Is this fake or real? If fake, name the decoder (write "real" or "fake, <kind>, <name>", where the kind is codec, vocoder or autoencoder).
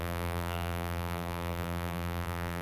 fake, vocoder, BigVGAN v2